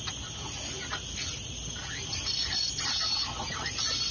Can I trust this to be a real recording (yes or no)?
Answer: yes